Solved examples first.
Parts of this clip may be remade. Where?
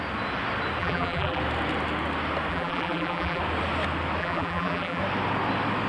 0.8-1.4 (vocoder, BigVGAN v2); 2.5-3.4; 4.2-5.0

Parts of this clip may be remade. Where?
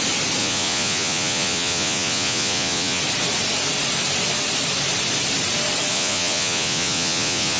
0.4-3.0 (vocoder, Vocos); 5.9-7.6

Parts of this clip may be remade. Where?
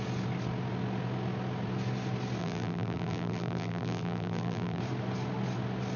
2.4-4.8 (vocoder, BigVGAN v2)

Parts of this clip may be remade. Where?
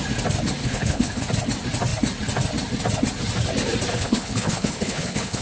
0.6-1.2 (codec, HILCodec); 3.9-5.4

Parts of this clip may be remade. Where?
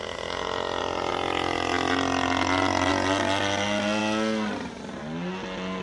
none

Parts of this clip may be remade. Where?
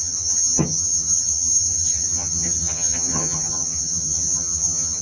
0.0-5.0 (vocoder, HiFi-GAN)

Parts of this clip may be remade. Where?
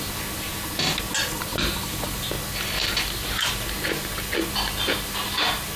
1.5-2.3 (vocoder, BigVGAN v2)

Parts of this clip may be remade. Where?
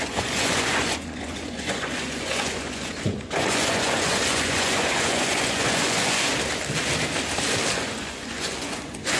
0.0-6.3 (vocoder, Vocos); 7.7-9.2